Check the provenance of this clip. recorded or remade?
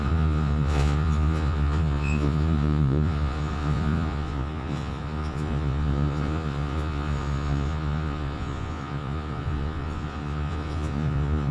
remade